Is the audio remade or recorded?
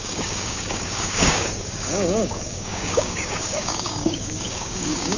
remade